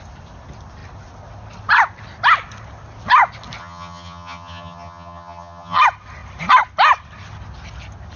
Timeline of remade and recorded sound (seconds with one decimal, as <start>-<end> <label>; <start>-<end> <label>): 0.0-3.6 recorded; 3.6-5.8 remade; 5.8-8.2 recorded